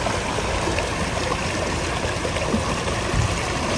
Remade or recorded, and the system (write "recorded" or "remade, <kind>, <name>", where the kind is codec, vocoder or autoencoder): recorded